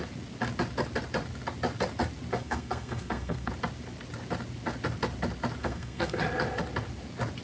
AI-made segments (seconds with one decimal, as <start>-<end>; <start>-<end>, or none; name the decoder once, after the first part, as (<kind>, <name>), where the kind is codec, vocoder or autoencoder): 2.3-3.5 (codec, SNAC); 5.6-6.2